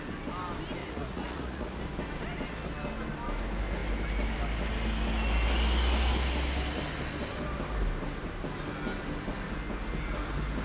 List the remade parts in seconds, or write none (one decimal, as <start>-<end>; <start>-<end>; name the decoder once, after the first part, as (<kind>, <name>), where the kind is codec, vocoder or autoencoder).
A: 0.8-1.8 (vocoder, Vocos)